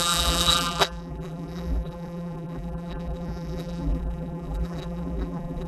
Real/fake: fake